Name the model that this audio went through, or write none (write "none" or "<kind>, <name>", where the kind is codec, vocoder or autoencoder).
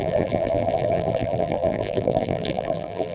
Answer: vocoder, BigVGAN v2